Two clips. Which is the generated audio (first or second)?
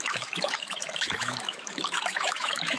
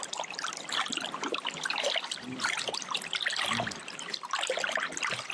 first